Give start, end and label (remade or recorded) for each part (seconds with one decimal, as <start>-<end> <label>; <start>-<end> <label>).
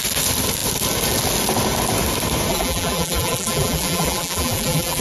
0.0-2.5 recorded; 2.5-5.0 remade